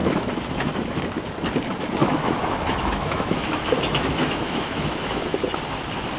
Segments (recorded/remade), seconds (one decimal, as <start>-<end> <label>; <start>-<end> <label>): 0.0-1.0 remade; 1.0-2.0 recorded; 2.0-5.6 remade; 5.6-6.2 recorded